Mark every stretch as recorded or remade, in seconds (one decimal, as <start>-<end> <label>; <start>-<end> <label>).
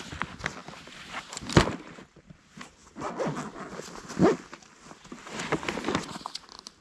0.0-0.6 recorded; 0.6-2.4 remade; 2.4-6.8 recorded